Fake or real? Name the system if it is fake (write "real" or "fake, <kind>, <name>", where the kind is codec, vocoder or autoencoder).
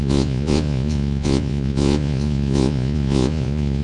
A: fake, vocoder, Vocos